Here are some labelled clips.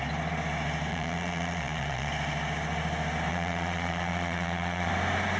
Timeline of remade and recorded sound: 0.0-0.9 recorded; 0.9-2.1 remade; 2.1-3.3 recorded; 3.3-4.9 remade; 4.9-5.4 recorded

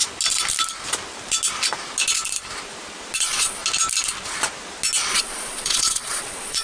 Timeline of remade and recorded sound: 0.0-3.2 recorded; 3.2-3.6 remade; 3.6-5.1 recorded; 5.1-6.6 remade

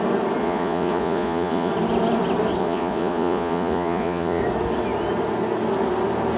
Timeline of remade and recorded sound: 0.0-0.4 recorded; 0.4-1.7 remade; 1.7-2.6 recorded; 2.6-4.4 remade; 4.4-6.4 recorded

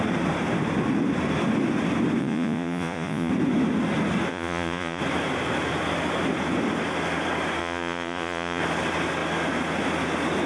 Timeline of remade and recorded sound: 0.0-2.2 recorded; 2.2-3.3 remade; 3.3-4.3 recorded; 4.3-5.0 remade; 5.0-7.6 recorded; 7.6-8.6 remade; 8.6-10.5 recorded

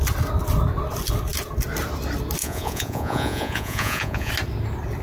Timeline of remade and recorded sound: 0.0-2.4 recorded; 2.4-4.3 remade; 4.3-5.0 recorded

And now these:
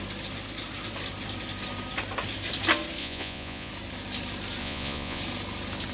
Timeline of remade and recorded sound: 0.0-3.0 recorded; 3.0-3.7 remade; 3.7-4.6 recorded; 4.6-5.2 remade; 5.2-5.9 recorded

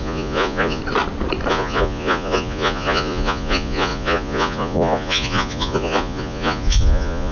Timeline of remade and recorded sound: 0.0-0.8 remade; 0.8-1.5 recorded; 1.5-7.3 remade

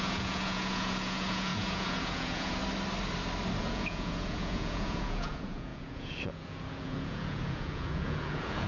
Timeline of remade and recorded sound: 0.0-2.6 remade; 2.6-3.6 recorded; 3.6-8.7 remade